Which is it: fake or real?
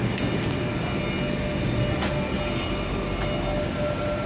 real